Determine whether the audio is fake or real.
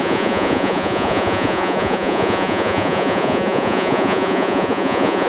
fake